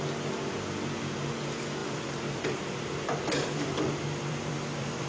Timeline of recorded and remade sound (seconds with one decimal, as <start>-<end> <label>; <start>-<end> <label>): 0.0-1.8 recorded; 1.8-5.1 remade